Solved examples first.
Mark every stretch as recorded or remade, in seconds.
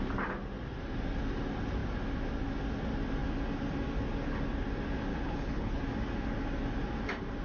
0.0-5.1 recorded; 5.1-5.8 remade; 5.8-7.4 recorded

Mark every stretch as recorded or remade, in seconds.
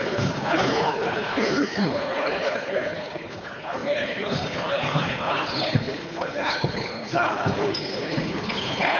0.0-9.0 remade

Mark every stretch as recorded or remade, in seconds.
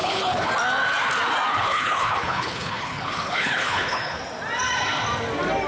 0.0-0.5 remade; 0.5-1.5 recorded; 1.5-4.2 remade; 4.2-5.7 recorded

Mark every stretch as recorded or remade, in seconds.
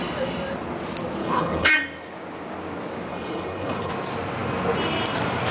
0.0-1.2 recorded; 1.2-1.7 remade; 1.7-3.1 recorded; 3.1-3.9 remade; 3.9-5.5 recorded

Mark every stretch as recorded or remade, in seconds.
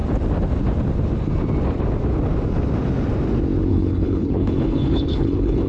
0.0-3.7 recorded; 3.7-5.7 remade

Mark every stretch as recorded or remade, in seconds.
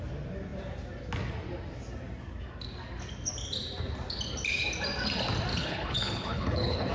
0.0-5.5 recorded; 5.5-6.9 remade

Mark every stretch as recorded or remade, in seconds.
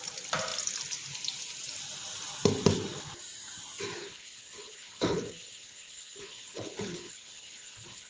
0.0-4.0 recorded; 4.0-8.1 remade